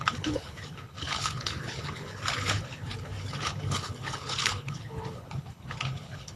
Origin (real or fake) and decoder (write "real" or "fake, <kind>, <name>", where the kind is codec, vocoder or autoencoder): fake, codec, HILCodec